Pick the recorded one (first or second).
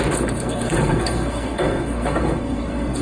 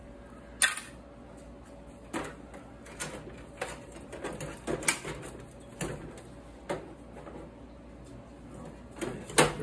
second